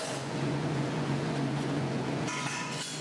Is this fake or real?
fake